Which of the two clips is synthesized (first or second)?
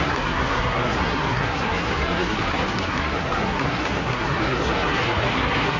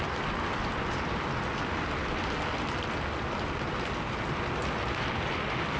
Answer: first